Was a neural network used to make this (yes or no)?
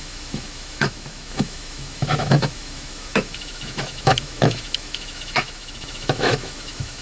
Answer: yes